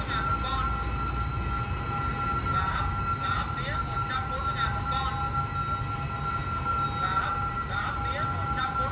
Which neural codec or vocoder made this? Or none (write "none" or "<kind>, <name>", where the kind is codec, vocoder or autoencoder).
none